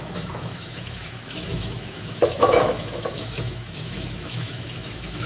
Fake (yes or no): yes